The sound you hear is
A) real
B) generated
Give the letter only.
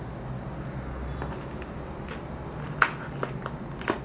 A